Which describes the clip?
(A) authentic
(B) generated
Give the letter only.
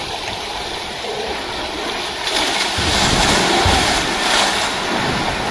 A